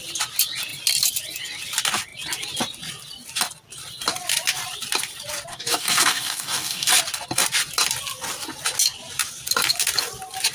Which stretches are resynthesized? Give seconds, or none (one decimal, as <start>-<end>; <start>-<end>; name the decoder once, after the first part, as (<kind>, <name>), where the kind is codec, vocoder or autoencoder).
5.5-6.9 (codec, DAC)